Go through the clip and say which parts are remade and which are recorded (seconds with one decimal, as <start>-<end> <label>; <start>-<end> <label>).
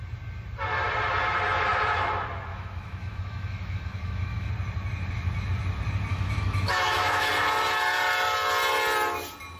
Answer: 0.0-2.5 recorded; 2.5-4.5 remade; 4.5-6.1 recorded; 6.1-7.3 remade; 7.3-9.6 recorded